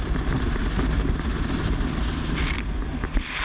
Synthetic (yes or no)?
no